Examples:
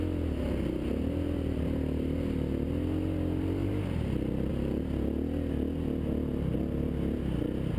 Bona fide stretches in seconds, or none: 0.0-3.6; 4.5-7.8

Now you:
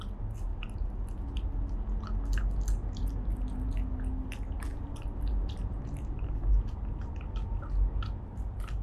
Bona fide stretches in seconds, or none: 0.0-0.5; 1.0-4.7; 6.8-8.8

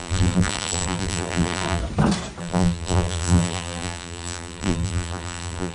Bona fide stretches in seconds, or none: 1.8-2.4

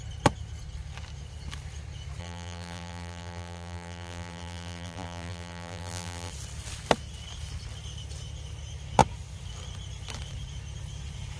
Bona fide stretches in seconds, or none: 0.0-2.2; 6.3-11.4